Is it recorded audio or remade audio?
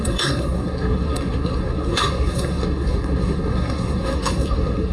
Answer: remade